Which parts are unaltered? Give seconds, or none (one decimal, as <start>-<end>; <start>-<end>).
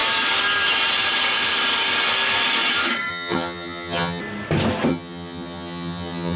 0.0-3.1; 4.2-4.9